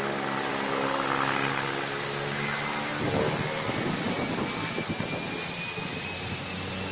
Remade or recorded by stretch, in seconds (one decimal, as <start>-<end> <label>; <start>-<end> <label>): 0.0-6.9 recorded